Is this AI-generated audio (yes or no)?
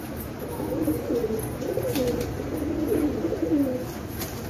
no